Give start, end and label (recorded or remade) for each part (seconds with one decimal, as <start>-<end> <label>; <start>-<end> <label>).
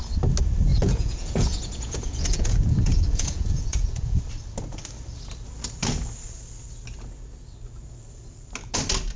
0.0-0.7 recorded; 0.7-4.2 remade; 4.2-9.2 recorded